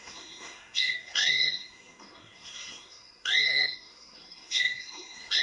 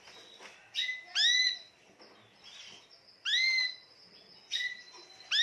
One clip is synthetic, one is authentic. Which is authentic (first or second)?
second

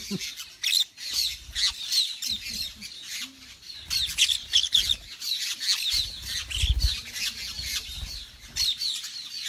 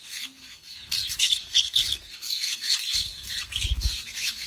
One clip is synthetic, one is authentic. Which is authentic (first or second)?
first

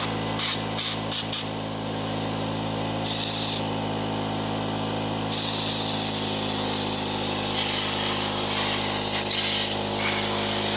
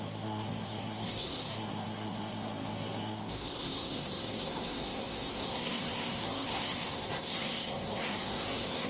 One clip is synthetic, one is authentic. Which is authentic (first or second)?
first